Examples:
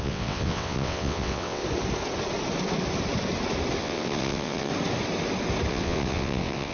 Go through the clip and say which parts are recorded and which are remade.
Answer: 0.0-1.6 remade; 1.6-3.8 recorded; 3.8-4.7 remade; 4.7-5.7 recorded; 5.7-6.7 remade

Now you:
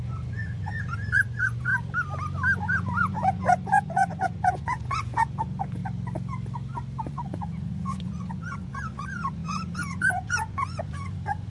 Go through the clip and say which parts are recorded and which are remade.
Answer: 0.0-1.7 remade; 1.7-2.6 recorded; 2.6-5.8 remade; 5.8-7.1 recorded; 7.1-11.5 remade

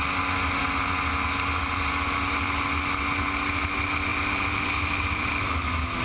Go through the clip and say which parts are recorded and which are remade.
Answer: 0.0-4.1 recorded; 4.1-5.3 remade; 5.3-6.0 recorded

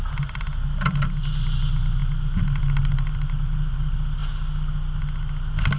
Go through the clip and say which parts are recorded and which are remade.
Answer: 0.0-5.8 recorded